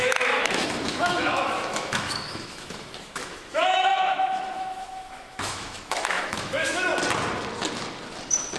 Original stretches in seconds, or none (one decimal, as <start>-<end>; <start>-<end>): 6.9-8.6